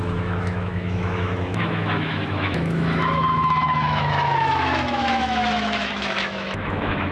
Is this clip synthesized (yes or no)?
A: yes